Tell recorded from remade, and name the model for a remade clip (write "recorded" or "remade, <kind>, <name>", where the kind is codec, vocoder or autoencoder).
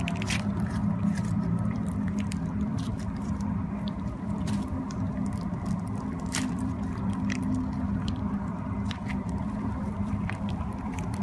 remade, vocoder, BigVGAN v2